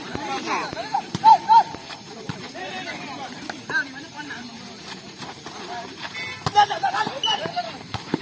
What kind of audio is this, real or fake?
fake